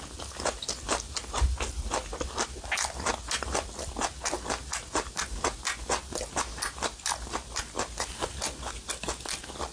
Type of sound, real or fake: real